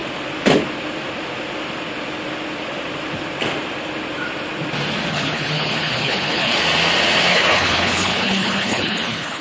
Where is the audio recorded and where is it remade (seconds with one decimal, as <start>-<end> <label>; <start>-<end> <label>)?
0.0-5.1 recorded; 5.1-6.6 remade; 6.6-7.3 recorded; 7.3-9.4 remade